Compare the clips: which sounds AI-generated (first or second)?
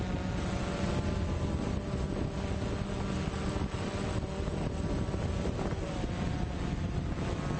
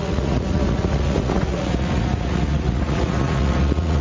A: second